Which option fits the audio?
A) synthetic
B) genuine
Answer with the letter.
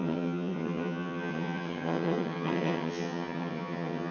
A